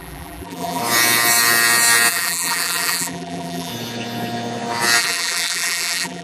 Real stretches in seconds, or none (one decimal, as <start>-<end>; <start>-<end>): 0.8-2.1; 3.7-5.0